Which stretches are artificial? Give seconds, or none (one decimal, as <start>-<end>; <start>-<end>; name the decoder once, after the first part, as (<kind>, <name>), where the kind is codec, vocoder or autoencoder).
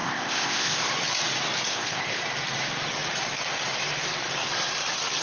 0.0-0.9 (codec, ZipCodec); 1.7-2.2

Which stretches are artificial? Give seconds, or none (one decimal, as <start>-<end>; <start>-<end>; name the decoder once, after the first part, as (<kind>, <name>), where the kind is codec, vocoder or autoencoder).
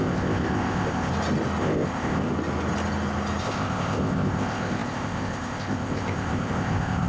0.0-1.1 (codec, ZipCodec); 1.6-2.3; 3.4-7.1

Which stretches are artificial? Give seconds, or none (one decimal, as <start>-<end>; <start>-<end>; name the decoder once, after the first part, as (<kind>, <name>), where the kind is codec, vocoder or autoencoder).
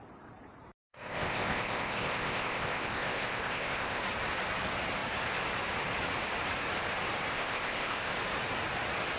0.9-4.0 (codec, ZipCodec); 7.3-8.1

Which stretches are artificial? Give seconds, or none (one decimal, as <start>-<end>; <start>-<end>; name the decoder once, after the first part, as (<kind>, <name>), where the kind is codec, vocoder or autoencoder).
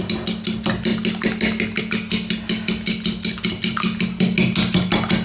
none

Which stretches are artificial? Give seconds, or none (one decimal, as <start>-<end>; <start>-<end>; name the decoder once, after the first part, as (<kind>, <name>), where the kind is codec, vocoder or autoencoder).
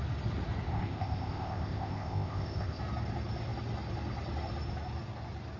0.7-2.8 (codec, ZipCodec)